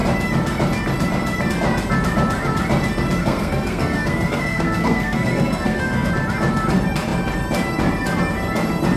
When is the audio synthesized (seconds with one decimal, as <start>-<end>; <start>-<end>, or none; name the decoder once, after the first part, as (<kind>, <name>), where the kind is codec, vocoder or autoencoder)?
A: 3.2-6.1 (codec, SNAC)